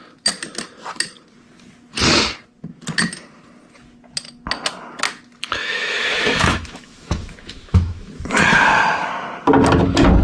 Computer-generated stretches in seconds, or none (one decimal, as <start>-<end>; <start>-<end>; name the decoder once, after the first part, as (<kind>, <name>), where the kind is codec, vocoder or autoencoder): 5.6-9.1 (autoencoder, DAC-VAE)